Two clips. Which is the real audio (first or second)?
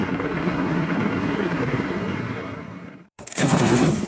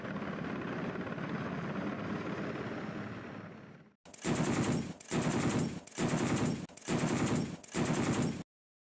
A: second